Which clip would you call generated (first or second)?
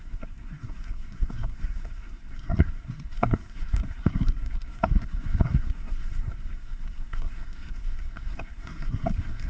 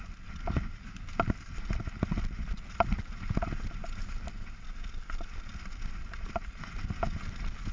first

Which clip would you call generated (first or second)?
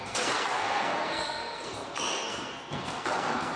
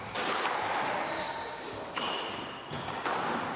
first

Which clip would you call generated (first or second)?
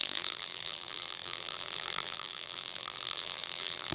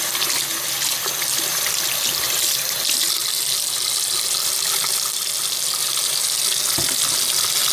first